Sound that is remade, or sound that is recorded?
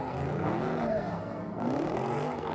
remade